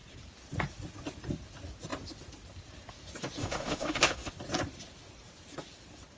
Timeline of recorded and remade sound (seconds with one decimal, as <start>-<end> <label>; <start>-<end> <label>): 0.0-3.4 recorded; 3.4-4.3 remade; 4.3-6.2 recorded